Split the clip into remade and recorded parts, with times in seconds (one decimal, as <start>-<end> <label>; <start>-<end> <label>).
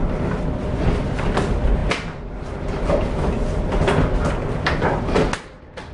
0.0-5.9 recorded